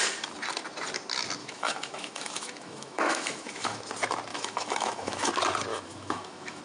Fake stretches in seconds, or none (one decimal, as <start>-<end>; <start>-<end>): 1.4-3.8; 4.3-5.3; 5.7-6.6